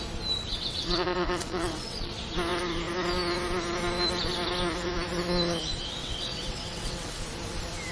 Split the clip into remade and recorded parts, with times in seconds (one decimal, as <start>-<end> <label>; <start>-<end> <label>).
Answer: 0.0-0.5 recorded; 0.5-2.1 remade; 2.1-6.0 recorded; 6.0-7.2 remade; 7.2-7.9 recorded